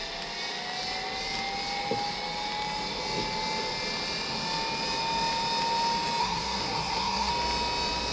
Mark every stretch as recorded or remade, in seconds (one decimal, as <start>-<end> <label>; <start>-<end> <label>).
0.0-6.2 recorded; 6.2-7.3 remade; 7.3-8.1 recorded